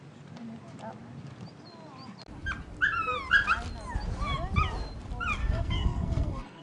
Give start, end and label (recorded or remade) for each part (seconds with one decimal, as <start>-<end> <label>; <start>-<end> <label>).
0.0-5.4 recorded; 5.4-6.6 remade